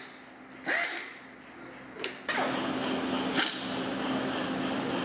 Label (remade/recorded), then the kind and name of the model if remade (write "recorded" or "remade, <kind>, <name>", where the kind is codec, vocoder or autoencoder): recorded